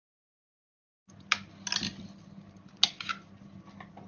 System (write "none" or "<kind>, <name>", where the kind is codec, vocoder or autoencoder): none